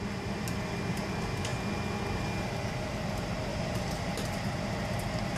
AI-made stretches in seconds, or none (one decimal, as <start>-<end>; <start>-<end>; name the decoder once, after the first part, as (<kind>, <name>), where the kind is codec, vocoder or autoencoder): 3.5-4.1 (vocoder, BigVGAN v2)